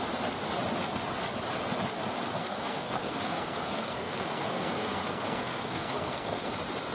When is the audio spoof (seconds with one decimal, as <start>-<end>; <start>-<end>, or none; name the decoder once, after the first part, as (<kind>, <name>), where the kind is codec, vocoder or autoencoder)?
2.4-6.5 (codec, SNAC)